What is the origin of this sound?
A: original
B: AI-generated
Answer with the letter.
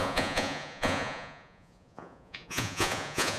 B